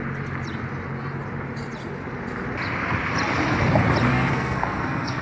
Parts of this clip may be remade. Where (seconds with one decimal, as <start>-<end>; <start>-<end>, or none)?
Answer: 4.1-5.2